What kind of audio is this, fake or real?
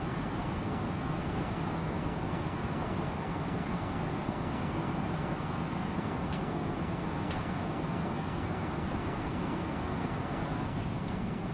fake